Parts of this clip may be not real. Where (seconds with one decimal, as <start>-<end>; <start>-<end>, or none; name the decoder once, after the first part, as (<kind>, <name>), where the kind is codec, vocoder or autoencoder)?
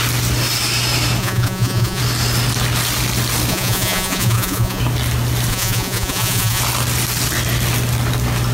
1.2-2.0 (vocoder, Vocos); 3.5-4.8; 5.5-6.6